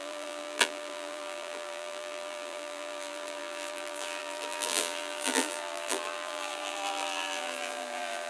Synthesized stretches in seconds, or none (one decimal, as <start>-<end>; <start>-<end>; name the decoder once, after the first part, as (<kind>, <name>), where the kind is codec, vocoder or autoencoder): 0.0-8.3 (vocoder, BigVGAN v2)